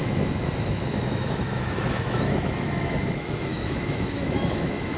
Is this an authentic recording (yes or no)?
no